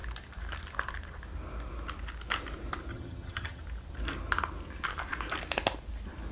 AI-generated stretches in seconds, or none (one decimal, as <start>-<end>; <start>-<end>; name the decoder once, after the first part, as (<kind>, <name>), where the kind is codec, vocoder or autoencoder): 2.9-3.6 (vocoder, HiFi-GAN)